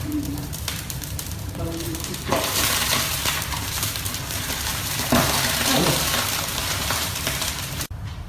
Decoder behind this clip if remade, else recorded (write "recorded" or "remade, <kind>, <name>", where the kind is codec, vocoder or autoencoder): remade, vocoder, BigVGAN v2